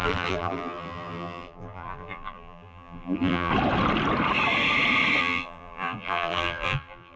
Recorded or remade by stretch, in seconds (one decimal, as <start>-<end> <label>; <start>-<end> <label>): 0.0-3.5 remade; 3.5-5.2 recorded; 5.2-7.2 remade